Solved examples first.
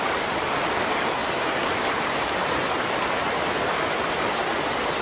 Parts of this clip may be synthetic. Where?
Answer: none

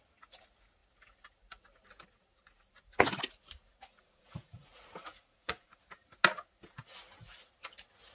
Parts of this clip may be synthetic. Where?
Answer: 3.9-5.8

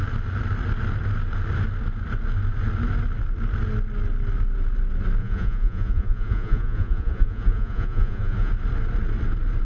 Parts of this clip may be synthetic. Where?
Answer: 5.2-8.5

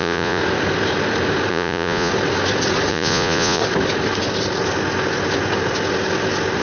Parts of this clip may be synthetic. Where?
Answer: 0.0-0.4; 1.5-2.1; 2.9-3.6

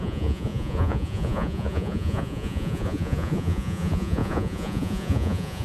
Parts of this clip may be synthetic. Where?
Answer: 0.0-5.6

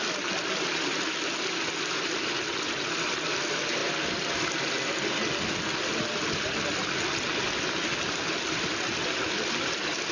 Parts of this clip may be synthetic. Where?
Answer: none